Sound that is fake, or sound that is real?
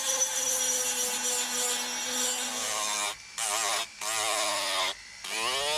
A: real